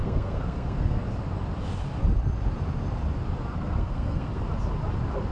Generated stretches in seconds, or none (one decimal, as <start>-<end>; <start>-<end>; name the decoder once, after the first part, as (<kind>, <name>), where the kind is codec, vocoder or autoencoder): 0.0-1.0 (codec, SNAC); 3.5-4.4